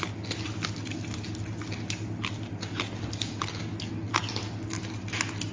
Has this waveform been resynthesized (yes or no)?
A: no